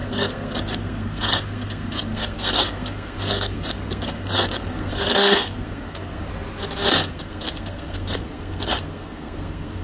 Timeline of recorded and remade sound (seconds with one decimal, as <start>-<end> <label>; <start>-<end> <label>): 0.0-6.3 remade; 6.3-6.9 recorded; 6.9-9.8 remade